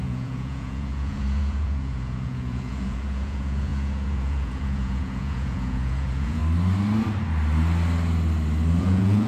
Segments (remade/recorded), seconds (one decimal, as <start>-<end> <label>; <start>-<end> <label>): 0.0-6.4 remade; 6.4-8.8 recorded; 8.8-9.3 remade